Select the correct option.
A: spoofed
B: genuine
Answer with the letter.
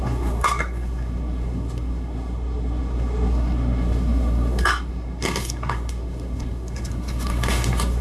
A